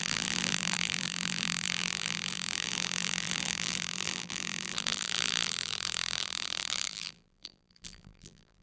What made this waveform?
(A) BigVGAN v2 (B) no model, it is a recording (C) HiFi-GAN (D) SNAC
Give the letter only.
A